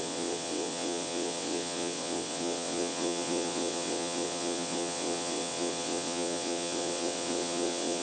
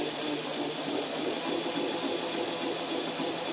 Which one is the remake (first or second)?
first